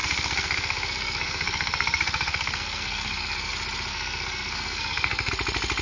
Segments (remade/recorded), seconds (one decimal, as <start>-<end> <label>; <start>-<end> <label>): 0.0-3.5 remade; 3.5-3.9 recorded; 3.9-5.3 remade; 5.3-5.8 recorded